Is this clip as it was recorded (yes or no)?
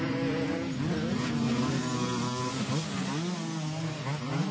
yes